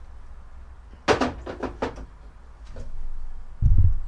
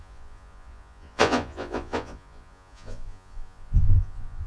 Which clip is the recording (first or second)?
first